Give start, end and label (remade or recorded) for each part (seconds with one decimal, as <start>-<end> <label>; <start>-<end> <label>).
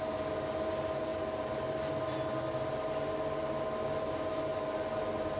0.0-5.4 recorded